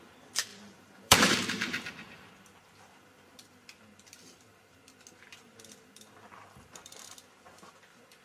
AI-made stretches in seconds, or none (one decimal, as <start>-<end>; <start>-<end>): 0.5-2.3